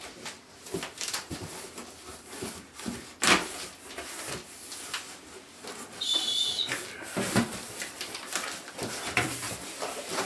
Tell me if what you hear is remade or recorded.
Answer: remade